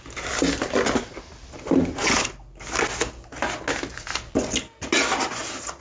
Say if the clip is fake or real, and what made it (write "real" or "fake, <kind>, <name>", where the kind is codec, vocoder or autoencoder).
real